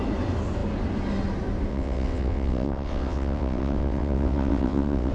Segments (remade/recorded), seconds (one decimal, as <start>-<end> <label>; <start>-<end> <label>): 0.0-1.7 recorded; 1.7-5.1 remade